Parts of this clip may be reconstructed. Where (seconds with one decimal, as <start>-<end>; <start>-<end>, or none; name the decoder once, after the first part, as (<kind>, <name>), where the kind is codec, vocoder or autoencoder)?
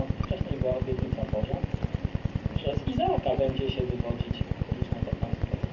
none